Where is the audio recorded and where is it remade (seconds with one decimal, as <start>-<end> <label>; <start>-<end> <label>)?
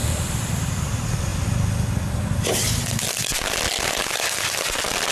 0.0-0.5 remade; 0.5-5.1 recorded